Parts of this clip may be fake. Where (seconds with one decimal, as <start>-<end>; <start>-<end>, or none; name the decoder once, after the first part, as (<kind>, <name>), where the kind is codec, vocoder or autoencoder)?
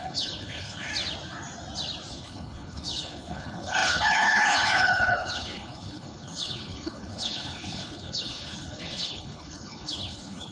0.0-0.9 (codec, HILCodec); 2.1-10.5